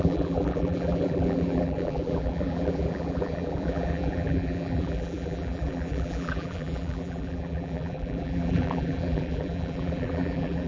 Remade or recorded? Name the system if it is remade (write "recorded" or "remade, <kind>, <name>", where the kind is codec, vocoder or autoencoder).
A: remade, vocoder, BigVGAN v2